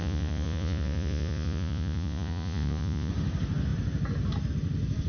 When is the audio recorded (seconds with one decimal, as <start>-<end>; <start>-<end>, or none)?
3.1-5.1